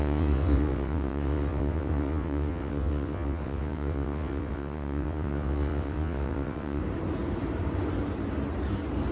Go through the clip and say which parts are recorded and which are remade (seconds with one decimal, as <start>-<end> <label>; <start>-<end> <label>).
0.0-6.8 remade; 6.8-9.1 recorded